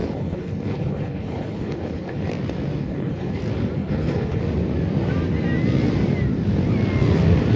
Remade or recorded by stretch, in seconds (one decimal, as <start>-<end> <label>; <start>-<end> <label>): 0.0-2.3 remade; 2.3-2.8 recorded; 2.8-3.4 remade; 3.4-3.8 recorded; 3.8-4.4 remade; 4.4-7.6 recorded